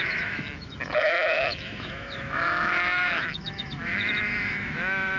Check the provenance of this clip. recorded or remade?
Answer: remade